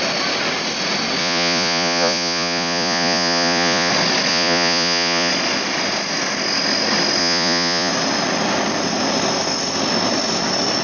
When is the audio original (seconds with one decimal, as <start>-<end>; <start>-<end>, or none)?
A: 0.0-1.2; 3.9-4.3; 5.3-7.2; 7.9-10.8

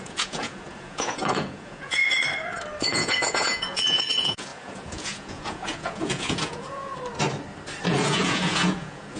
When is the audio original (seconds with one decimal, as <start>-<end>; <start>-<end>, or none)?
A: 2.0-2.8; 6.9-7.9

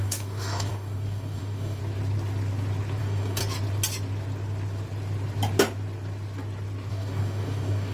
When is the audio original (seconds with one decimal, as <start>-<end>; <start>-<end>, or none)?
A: 1.8-3.0; 3.4-6.9

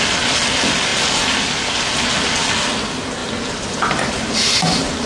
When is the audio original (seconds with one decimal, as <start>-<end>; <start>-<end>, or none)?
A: 0.0-0.9; 2.1-3.2

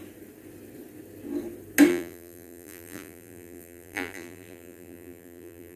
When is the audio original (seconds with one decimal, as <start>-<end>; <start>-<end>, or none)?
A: 0.0-1.9